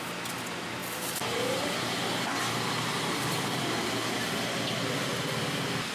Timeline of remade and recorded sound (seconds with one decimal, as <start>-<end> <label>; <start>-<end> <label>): 0.0-5.9 recorded